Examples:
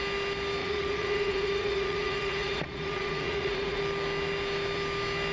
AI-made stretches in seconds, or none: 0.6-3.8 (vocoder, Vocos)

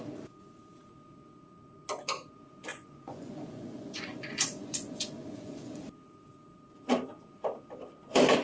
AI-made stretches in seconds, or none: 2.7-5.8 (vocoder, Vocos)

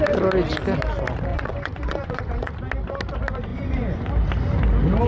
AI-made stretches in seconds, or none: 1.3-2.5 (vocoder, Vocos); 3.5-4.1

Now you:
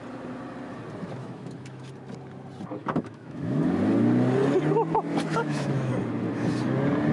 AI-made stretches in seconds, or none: 1.2-1.9 (autoencoder, DAC-VAE); 2.8-3.6; 5.3-5.9

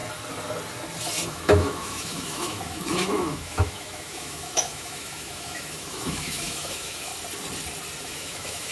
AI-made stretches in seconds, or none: 1.3-7.1 (autoencoder, DAC-VAE); 8.0-8.7

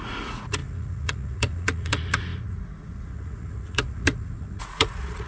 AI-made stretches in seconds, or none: 0.0-5.3 (vocoder, Vocos)

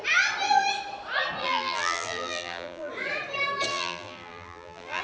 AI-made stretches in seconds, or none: 1.4-2.9 (vocoder, BigVGAN v2); 3.7-5.0